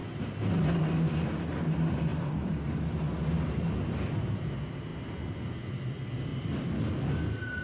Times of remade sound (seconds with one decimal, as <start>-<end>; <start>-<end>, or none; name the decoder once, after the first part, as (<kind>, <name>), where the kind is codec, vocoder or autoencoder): 6.3-6.9 (vocoder, BigVGAN v2)